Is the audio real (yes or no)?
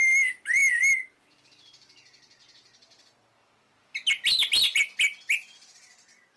yes